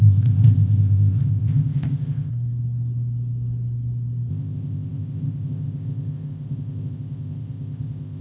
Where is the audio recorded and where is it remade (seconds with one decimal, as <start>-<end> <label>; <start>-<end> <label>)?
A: 0.0-2.3 remade; 2.3-4.3 recorded; 4.3-8.2 remade